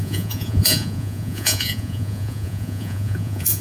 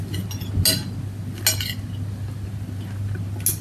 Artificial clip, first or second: first